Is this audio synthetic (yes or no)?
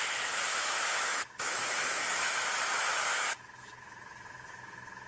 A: yes